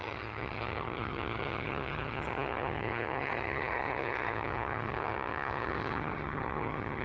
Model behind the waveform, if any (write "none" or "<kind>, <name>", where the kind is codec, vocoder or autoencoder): vocoder, HiFi-GAN